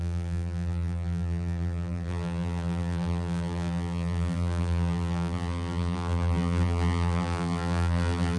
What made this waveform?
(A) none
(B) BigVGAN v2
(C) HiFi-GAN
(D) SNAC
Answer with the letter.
B